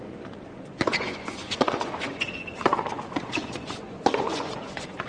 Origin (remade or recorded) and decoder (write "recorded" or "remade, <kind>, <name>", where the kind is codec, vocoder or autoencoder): remade, vocoder, Vocos